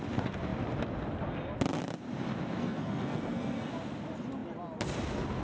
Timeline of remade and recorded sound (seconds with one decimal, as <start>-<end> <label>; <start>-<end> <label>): 0.0-2.6 recorded; 2.6-3.7 remade; 3.7-5.4 recorded